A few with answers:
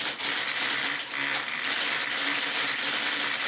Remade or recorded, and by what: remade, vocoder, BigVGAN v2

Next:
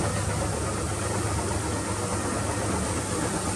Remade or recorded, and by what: recorded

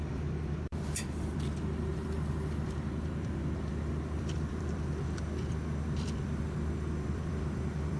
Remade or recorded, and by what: remade, vocoder, BigVGAN v2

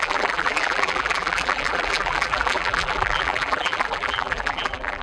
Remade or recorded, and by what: remade, vocoder, BigVGAN v2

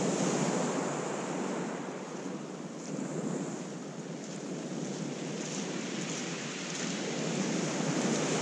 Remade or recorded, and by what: recorded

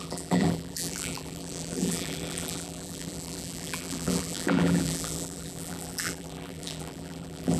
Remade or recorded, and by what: remade, vocoder, BigVGAN v2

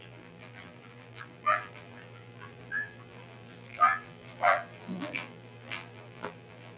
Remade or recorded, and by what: remade, vocoder, BigVGAN v2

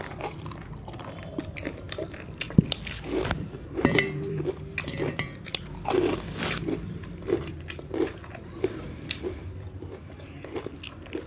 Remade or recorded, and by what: remade, vocoder, BigVGAN v2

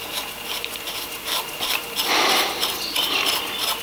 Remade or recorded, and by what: recorded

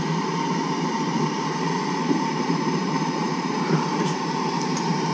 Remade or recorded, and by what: remade, vocoder, BigVGAN v2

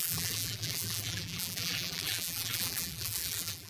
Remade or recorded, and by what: remade, vocoder, BigVGAN v2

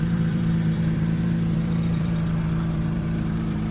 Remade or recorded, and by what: remade, vocoder, BigVGAN v2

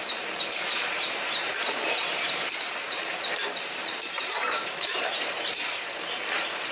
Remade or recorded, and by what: remade, vocoder, BigVGAN v2